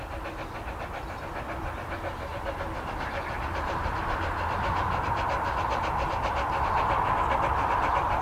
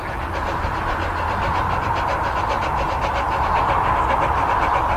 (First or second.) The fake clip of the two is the first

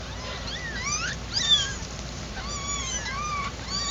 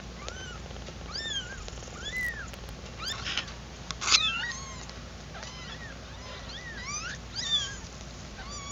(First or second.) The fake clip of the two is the first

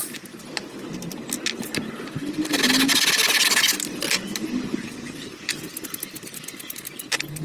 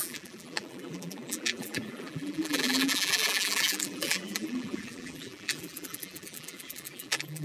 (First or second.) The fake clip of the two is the second